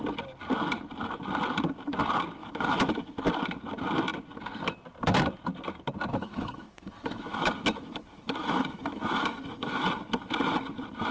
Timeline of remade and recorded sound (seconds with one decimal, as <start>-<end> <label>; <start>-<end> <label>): 0.0-2.4 recorded; 2.4-3.3 remade; 3.3-6.1 recorded; 6.1-9.8 remade; 9.8-11.1 recorded